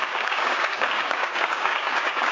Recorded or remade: remade